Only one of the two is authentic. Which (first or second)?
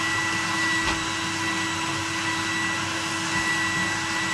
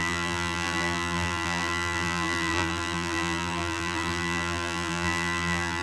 first